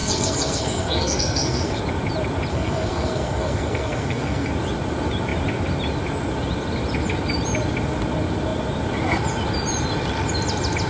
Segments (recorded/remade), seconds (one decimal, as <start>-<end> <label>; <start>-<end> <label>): 0.0-1.8 remade; 1.8-2.5 recorded; 2.5-4.5 remade; 4.5-10.9 recorded